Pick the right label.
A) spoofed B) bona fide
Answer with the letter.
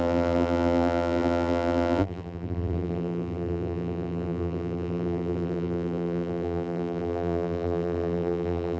A